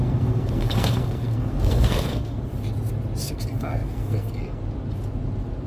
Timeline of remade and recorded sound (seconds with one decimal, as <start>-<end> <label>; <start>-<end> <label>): 0.0-2.5 remade; 2.5-3.2 recorded; 3.2-4.6 remade; 4.6-5.7 recorded